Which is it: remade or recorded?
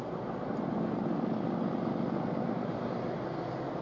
recorded